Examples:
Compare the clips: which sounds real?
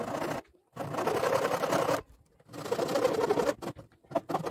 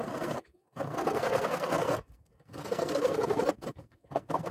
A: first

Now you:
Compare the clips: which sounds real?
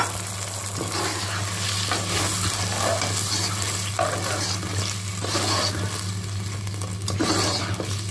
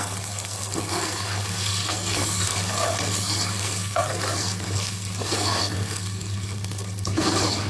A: first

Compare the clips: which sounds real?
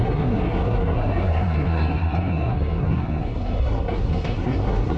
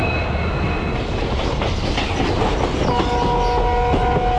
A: second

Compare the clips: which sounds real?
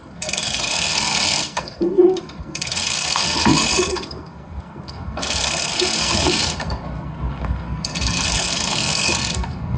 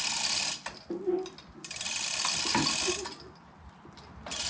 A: second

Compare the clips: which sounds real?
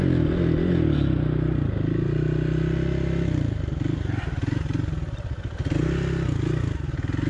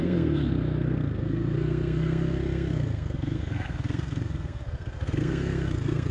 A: first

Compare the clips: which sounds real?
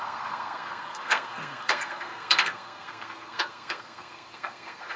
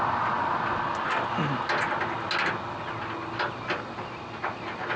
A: second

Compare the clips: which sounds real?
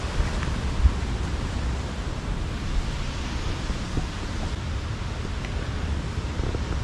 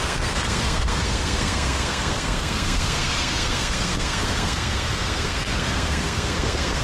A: first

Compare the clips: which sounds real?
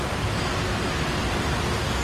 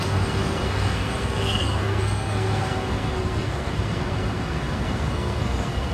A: first